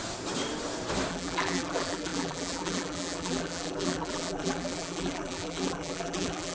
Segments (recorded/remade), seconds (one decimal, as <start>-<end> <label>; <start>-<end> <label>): 0.0-1.1 recorded; 1.1-6.5 remade